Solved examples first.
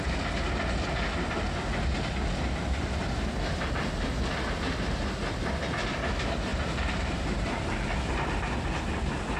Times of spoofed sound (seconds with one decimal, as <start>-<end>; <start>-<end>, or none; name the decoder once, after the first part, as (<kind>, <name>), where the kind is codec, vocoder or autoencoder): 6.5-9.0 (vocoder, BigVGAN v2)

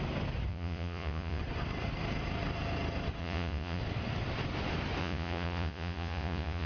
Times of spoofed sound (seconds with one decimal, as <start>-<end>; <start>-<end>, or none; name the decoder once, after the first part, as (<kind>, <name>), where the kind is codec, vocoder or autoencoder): 0.5-1.4 (vocoder, Vocos); 3.2-3.8; 5.0-6.7

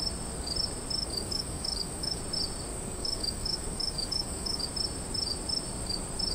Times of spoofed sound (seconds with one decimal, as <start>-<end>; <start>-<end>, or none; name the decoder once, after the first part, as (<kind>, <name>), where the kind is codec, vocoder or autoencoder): 1.0-2.2 (codec, DAC); 2.7-4.6

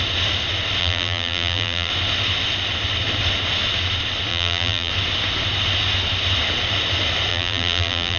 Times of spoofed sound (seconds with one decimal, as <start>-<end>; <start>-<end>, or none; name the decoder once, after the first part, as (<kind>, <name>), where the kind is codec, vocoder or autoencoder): 0.8-1.9 (vocoder, BigVGAN v2); 4.3-4.9; 7.3-8.2